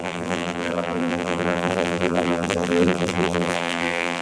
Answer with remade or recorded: remade